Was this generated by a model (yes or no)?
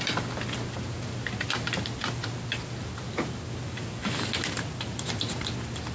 no